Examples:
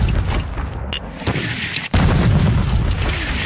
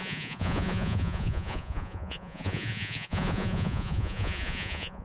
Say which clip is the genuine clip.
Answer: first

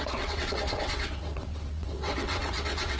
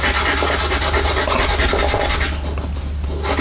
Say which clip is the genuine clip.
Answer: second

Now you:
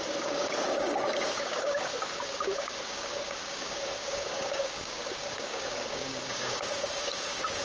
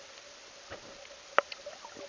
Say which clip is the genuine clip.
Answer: second